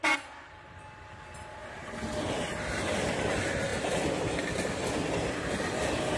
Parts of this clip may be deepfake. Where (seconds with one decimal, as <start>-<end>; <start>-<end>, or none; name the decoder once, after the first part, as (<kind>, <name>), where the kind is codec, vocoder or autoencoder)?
none